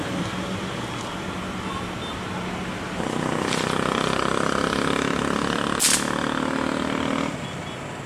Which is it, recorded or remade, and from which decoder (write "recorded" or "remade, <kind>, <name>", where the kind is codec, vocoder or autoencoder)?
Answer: recorded